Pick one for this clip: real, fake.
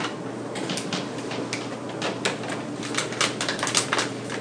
real